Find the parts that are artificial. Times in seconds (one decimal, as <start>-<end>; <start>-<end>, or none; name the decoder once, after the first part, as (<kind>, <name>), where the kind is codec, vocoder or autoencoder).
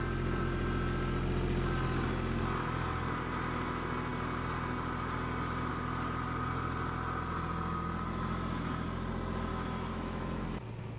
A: 9.5-10.4 (autoencoder, DAC-VAE)